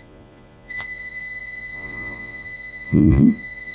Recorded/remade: remade